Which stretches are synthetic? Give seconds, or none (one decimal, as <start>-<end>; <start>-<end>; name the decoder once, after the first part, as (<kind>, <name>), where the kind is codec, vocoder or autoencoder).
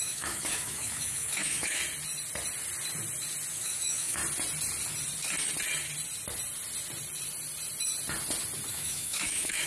0.0-1.8 (autoencoder, DAC-VAE); 3.5-4.2; 8.7-9.7